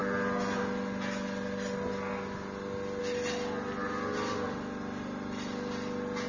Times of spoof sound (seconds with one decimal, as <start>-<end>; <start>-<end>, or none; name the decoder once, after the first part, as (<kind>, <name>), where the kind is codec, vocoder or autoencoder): none